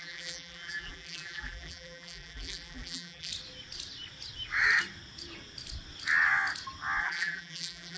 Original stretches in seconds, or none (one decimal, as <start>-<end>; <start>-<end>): 3.3-7.0